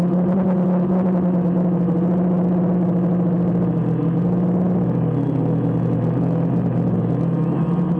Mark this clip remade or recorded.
recorded